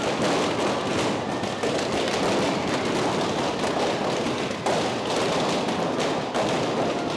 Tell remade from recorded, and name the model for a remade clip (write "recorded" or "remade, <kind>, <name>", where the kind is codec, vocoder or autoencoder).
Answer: recorded